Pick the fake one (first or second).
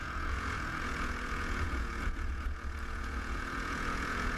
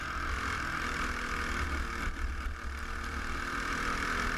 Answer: first